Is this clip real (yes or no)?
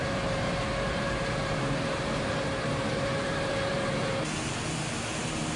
no